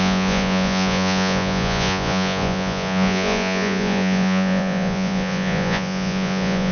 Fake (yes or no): yes